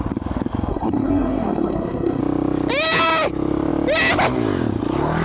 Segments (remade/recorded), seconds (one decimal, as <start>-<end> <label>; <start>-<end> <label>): 0.0-0.7 recorded; 0.7-2.2 remade; 2.2-5.2 recorded